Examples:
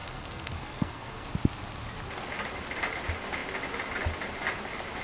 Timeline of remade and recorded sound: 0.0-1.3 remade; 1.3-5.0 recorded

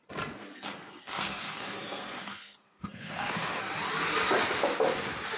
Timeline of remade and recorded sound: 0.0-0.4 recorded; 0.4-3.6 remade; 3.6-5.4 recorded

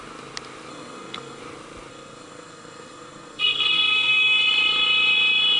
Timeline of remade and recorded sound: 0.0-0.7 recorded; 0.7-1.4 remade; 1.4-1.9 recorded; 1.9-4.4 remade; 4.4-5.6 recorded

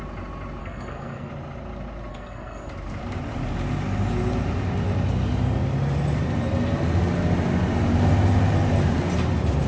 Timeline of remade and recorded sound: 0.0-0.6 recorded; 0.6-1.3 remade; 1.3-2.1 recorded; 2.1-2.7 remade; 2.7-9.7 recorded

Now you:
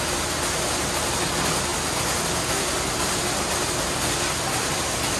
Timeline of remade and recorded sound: 0.0-5.2 recorded

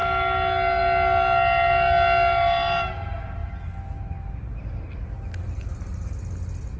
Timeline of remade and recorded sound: 0.0-6.8 recorded

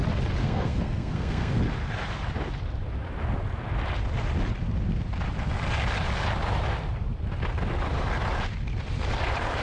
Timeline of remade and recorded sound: 0.0-0.4 recorded; 0.4-1.6 remade; 1.6-9.6 recorded